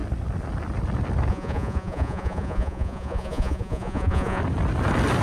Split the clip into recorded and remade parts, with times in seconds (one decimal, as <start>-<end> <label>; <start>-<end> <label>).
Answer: 0.0-1.3 recorded; 1.3-4.4 remade; 4.4-5.2 recorded